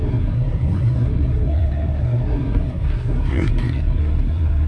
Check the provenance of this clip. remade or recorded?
remade